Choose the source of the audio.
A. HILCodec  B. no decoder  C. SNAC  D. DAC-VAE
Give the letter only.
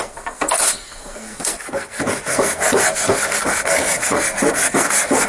C